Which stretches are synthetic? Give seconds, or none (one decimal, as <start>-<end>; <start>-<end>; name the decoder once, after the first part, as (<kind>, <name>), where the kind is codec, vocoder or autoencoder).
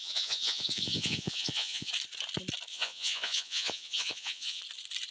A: 0.0-1.9 (vocoder, Vocos); 2.7-4.6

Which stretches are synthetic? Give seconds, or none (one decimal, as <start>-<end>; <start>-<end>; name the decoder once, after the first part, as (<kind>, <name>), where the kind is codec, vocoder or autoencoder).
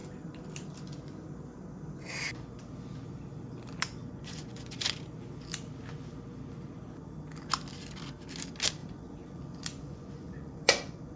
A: 4.1-4.8 (vocoder, Vocos); 8.8-11.2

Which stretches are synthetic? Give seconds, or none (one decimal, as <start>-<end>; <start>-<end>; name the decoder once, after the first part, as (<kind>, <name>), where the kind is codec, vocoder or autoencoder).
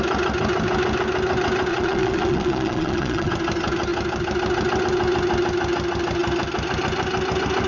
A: 1.7-3.3 (vocoder, Vocos)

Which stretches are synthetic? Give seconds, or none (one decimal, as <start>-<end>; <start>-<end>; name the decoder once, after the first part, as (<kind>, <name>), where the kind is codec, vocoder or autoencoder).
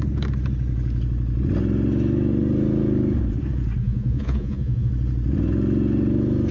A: 3.8-4.9 (vocoder, Vocos)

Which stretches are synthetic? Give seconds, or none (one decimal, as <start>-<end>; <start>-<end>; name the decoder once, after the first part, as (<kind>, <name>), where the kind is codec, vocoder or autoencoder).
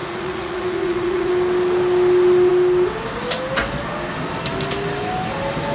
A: 0.0-1.3 (vocoder, Vocos)